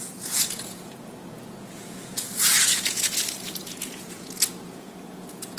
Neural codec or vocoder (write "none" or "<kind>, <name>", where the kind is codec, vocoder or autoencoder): vocoder, Vocos